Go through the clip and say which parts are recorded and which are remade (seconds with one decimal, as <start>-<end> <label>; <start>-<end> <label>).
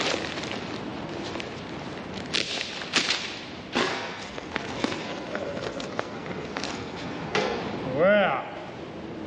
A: 0.0-3.8 recorded; 3.8-7.6 remade; 7.6-9.3 recorded